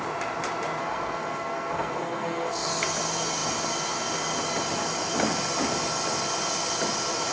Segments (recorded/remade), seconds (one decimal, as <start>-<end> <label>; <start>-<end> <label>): 0.0-0.8 recorded; 0.8-2.7 remade; 2.7-7.3 recorded